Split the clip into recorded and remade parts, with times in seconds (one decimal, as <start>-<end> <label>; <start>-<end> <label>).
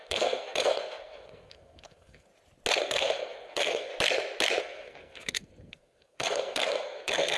0.0-2.3 remade; 2.3-2.8 recorded; 2.8-3.9 remade; 3.9-4.6 recorded; 4.6-7.4 remade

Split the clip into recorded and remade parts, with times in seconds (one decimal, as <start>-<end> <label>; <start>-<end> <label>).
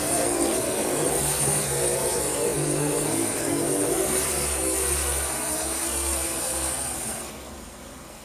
0.0-8.2 remade